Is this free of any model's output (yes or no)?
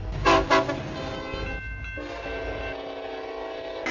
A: yes